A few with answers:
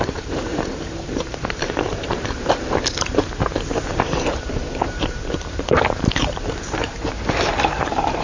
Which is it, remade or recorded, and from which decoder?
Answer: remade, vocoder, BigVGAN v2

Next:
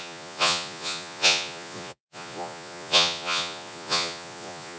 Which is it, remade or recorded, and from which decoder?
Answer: remade, vocoder, Vocos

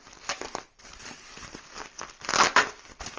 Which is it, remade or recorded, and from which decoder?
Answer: recorded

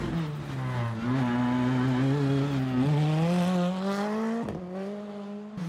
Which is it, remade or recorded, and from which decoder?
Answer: recorded